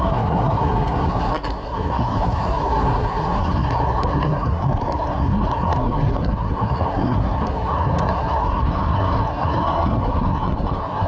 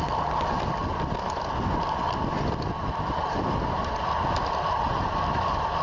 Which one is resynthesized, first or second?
first